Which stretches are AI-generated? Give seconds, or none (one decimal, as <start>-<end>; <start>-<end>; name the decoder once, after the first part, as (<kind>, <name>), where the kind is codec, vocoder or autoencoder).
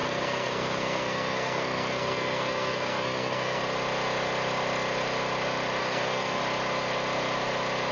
0.0-3.6 (codec, SNAC); 5.8-6.4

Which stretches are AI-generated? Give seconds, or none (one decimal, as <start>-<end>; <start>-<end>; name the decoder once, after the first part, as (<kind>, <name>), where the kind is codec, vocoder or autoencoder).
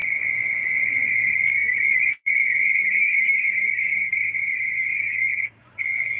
0.0-2.7 (vocoder, Vocos); 5.6-6.2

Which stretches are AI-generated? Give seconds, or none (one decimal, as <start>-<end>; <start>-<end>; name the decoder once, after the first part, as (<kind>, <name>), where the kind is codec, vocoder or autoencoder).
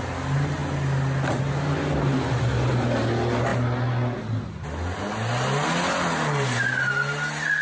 none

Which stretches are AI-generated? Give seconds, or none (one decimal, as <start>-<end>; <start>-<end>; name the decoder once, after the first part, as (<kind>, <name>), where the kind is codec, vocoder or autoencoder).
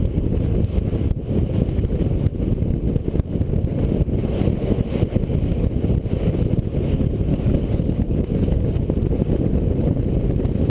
7.3-8.8 (codec, DAC)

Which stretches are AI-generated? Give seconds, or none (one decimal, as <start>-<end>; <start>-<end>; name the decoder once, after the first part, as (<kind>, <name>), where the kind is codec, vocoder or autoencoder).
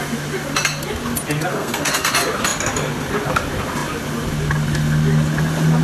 1.5-2.1 (codec, SNAC)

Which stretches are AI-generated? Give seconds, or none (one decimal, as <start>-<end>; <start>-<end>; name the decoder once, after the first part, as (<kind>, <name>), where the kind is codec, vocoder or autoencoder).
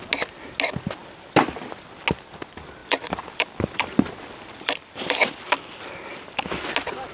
2.8-6.4 (vocoder, BigVGAN v2)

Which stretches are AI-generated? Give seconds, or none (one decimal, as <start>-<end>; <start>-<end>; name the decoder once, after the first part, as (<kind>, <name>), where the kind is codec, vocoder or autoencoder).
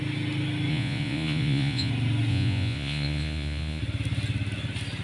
0.7-1.9 (vocoder, Vocos); 2.3-3.8